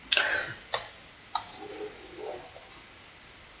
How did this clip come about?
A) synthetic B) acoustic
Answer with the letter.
B